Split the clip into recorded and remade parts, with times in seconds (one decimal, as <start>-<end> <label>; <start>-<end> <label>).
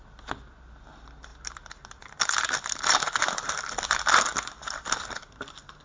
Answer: 0.0-5.8 recorded